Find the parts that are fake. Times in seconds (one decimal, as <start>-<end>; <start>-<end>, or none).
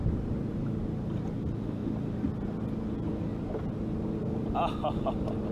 0.0-0.8